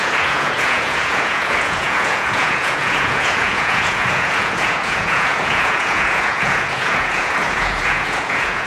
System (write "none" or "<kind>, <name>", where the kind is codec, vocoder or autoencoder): vocoder, Vocos